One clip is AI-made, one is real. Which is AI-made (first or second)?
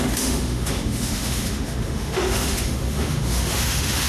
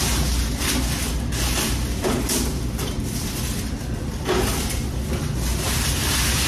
first